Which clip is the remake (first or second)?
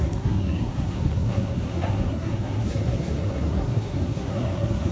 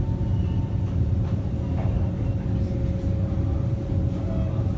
first